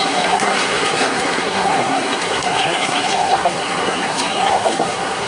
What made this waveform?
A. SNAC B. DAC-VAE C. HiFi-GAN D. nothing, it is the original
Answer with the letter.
A